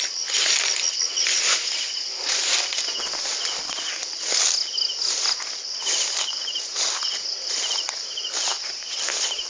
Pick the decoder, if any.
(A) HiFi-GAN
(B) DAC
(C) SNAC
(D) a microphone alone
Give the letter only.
D